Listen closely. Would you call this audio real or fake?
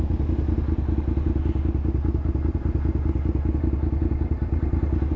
real